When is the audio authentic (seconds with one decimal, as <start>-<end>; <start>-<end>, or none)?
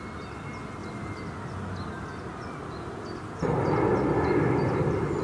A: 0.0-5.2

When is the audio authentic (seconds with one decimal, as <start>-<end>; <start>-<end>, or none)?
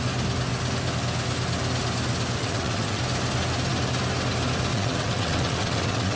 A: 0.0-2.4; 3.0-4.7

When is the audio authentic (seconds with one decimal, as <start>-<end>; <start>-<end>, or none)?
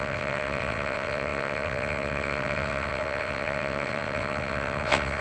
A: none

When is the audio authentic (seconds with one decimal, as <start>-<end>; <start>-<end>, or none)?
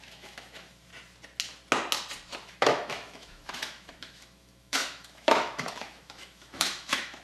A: 0.9-2.4